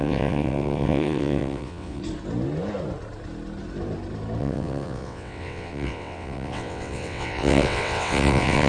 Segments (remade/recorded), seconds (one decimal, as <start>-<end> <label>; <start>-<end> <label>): 0.0-2.0 remade; 2.0-4.4 recorded; 4.4-8.7 remade